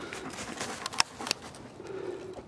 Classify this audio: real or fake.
real